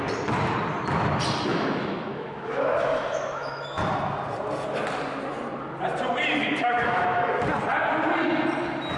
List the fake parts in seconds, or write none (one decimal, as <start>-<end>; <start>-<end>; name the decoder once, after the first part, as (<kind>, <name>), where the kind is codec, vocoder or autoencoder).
1.5-3.8 (autoencoder, DAC-VAE); 6.4-7.4

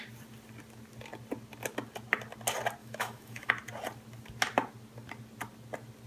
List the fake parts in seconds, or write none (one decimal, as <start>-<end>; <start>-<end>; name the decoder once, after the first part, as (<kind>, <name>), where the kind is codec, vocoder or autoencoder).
2.8-3.5 (autoencoder, DAC-VAE)